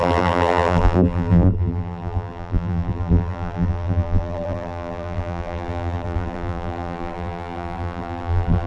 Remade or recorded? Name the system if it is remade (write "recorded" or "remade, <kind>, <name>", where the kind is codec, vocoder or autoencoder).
remade, vocoder, BigVGAN v2